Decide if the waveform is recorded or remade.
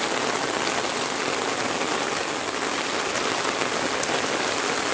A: recorded